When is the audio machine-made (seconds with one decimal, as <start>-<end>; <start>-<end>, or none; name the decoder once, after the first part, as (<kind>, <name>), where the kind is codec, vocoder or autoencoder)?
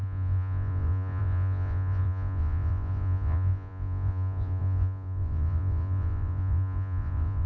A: 0.0-7.5 (vocoder, Vocos)